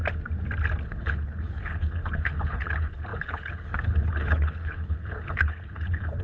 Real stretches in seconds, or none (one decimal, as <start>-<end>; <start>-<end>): 0.0-0.8